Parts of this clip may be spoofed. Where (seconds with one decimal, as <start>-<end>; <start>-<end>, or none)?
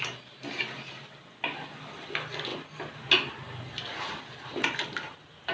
none